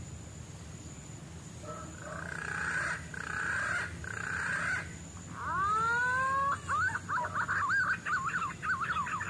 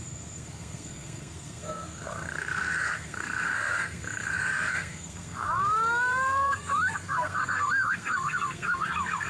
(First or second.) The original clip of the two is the first